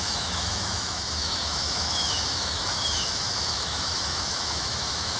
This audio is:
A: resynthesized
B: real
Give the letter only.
A